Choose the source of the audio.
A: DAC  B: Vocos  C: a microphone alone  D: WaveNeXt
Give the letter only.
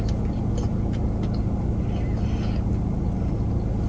C